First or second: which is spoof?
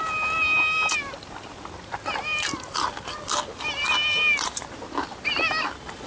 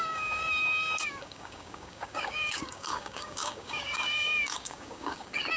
second